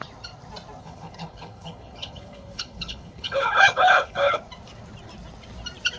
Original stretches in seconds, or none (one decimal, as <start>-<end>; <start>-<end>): 0.0-0.8; 4.4-6.0